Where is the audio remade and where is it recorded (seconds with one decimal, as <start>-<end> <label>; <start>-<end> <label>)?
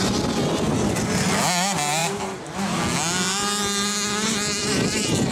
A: 0.0-2.0 recorded; 2.0-2.8 remade; 2.8-4.6 recorded; 4.6-5.3 remade